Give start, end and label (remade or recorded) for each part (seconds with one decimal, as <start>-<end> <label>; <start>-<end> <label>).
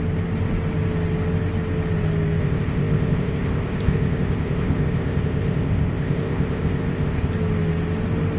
0.0-2.4 recorded; 2.4-7.3 remade; 7.3-8.4 recorded